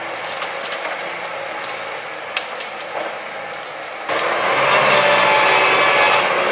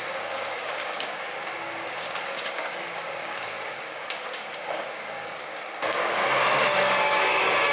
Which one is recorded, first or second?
first